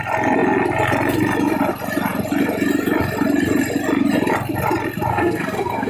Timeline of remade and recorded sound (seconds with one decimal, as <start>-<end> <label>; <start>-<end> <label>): 0.0-5.1 recorded; 5.1-5.9 remade